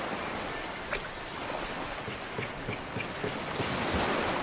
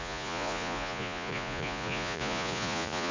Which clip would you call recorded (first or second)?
first